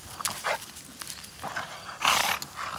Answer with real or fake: real